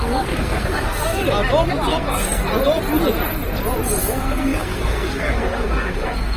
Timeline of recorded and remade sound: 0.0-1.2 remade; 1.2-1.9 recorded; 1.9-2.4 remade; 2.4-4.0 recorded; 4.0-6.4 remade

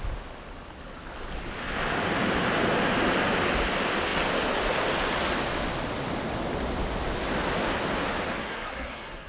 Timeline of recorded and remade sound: 0.0-8.4 recorded; 8.4-9.3 remade

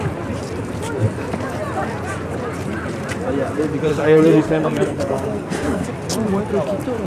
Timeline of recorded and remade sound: 0.0-3.9 recorded; 3.9-5.9 remade; 5.9-7.1 recorded

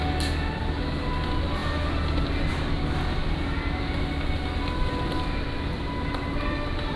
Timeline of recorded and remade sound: 0.0-7.0 recorded

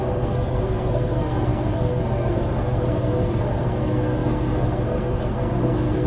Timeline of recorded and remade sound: 0.0-6.1 remade

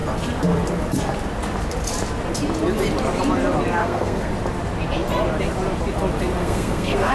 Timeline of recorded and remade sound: 0.0-3.8 recorded; 3.8-4.3 remade; 4.3-6.4 recorded; 6.4-7.1 remade